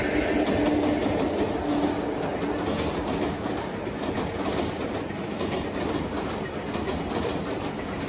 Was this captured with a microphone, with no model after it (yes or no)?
yes